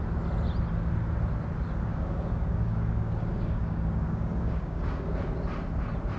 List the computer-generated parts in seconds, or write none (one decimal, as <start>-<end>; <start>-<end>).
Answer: 1.9-5.1

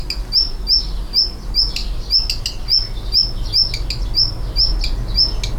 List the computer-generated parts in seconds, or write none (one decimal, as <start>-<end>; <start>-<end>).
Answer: none

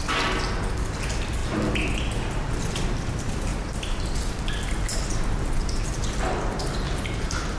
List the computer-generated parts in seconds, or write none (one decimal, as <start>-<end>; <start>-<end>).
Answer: none

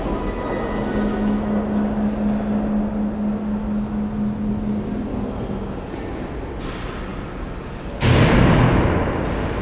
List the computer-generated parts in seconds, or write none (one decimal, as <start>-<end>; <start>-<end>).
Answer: none

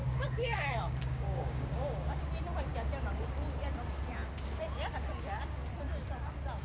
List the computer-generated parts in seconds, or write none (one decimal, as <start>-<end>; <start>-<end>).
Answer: 0.0-2.2

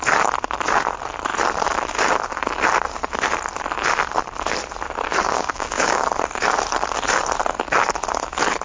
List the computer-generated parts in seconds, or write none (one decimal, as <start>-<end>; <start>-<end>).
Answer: 5.2-6.0

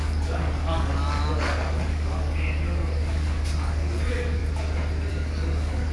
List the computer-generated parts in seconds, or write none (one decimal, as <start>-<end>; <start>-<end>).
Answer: 0.0-4.4; 5.1-5.9